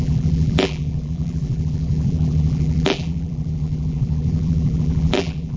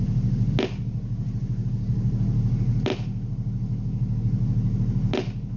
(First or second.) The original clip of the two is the second